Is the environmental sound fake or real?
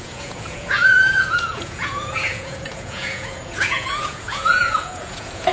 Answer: fake